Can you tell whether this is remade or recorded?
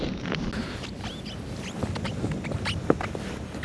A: recorded